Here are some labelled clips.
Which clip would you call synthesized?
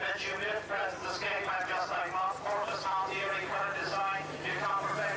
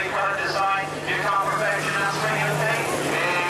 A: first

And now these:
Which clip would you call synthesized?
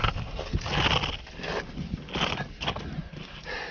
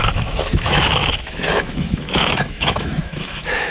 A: second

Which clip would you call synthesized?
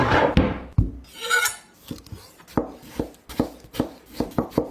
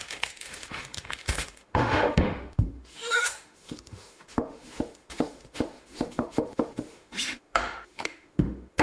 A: second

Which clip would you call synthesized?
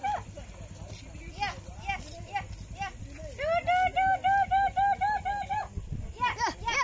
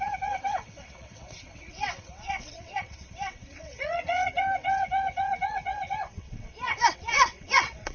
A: second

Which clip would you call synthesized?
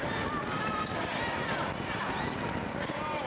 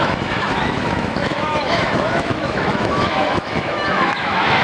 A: second